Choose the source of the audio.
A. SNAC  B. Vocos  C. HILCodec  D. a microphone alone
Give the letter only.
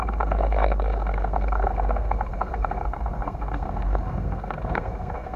A